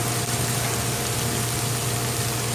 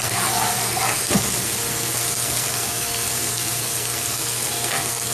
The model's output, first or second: second